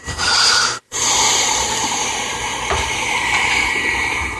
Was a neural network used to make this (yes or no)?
yes